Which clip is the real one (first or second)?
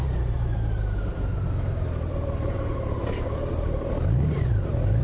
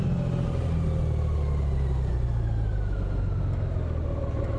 second